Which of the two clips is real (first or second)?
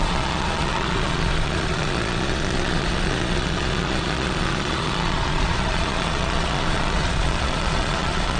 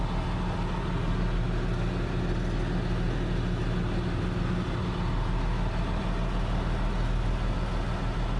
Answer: second